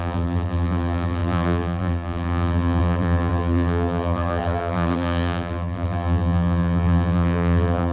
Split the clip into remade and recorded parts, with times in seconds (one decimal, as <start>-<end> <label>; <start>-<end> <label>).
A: 0.0-7.9 remade